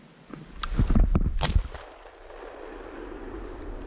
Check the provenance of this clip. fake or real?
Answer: real